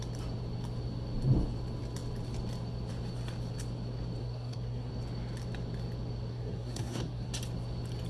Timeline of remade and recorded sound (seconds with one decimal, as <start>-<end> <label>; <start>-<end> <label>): 0.0-4.2 recorded; 4.2-4.9 remade; 4.9-6.3 recorded; 6.3-7.3 remade; 7.3-8.1 recorded